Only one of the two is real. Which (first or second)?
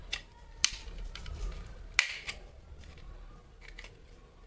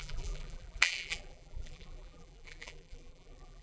first